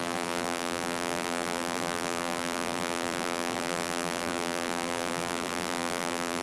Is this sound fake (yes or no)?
yes